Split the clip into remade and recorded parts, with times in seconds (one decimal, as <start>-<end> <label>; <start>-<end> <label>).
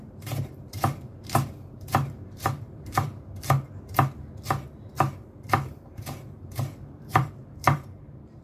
0.0-3.1 remade; 3.1-5.5 recorded; 5.5-8.4 remade